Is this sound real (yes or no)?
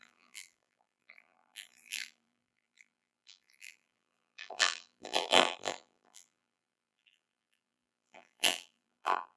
no